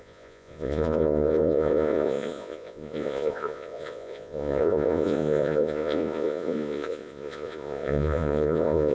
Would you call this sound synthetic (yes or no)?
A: yes